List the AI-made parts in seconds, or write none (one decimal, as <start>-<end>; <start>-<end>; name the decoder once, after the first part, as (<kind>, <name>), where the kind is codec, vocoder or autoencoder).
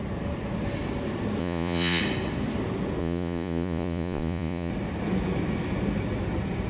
1.4-2.0 (vocoder, Vocos); 3.0-4.7